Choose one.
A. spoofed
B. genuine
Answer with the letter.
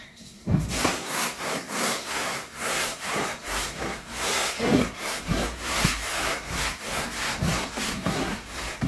A